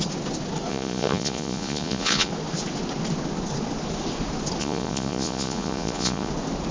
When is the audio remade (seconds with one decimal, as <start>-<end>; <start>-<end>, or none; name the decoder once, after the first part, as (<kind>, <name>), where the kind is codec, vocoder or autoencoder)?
0.7-2.3 (vocoder, Vocos); 4.6-6.3